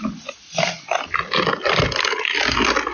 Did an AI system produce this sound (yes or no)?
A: no